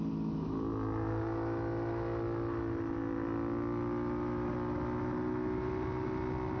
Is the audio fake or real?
real